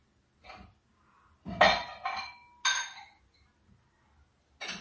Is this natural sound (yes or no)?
yes